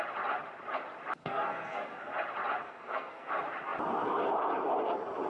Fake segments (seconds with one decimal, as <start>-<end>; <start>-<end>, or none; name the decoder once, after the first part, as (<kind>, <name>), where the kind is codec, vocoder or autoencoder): 1.2-2.1 (codec, SNAC); 2.6-3.3